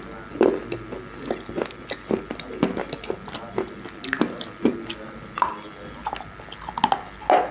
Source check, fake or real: real